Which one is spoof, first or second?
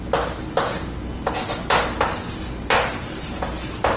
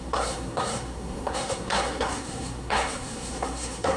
second